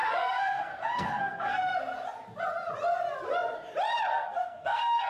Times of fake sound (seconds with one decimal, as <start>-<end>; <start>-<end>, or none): 0.0-1.7; 4.1-5.1